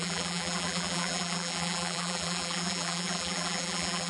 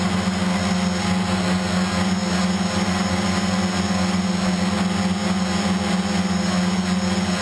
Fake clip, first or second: first